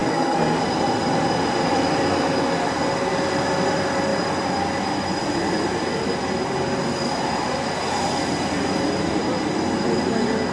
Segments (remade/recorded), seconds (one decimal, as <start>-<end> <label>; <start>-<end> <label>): 0.0-0.6 remade; 0.6-10.5 recorded